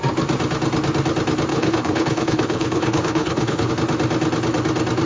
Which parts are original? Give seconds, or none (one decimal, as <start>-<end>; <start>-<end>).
0.0-1.5; 3.7-5.1